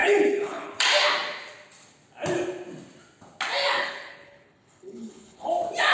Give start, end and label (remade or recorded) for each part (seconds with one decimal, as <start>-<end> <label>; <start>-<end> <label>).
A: 0.0-0.7 remade; 0.7-3.8 recorded; 3.8-5.5 remade; 5.5-5.9 recorded